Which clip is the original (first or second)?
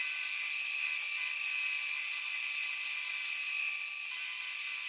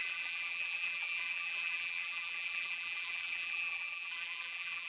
first